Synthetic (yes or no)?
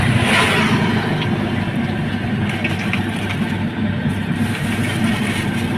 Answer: no